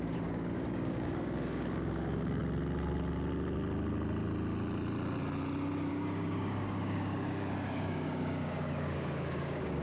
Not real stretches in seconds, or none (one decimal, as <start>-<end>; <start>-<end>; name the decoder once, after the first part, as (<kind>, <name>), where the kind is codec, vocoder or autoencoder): 0.0-2.4 (codec, DAC); 5.9-9.8